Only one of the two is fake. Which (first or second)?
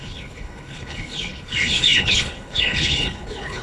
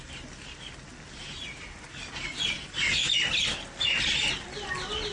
first